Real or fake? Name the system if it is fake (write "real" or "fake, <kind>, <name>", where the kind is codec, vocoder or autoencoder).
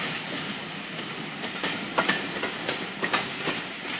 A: fake, vocoder, BigVGAN v2